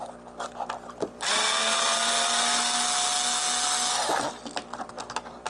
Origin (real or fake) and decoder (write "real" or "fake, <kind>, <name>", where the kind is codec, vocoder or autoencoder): real